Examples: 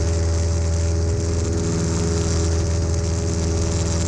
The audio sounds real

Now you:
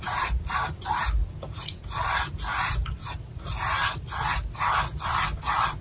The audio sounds real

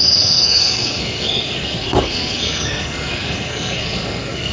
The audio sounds fake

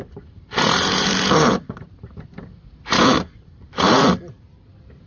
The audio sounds fake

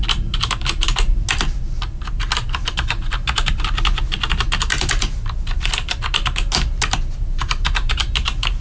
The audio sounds real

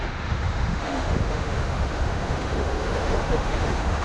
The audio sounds fake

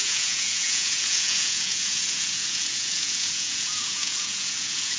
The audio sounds fake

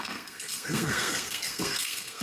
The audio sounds fake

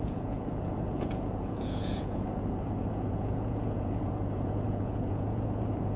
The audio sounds fake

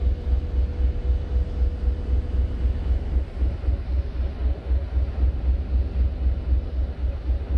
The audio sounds real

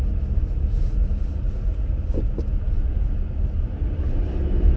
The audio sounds real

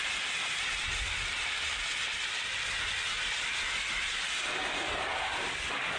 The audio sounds real